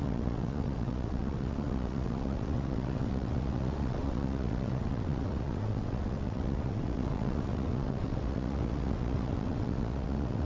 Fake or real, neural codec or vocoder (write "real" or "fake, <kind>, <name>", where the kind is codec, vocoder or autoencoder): fake, vocoder, WaveNeXt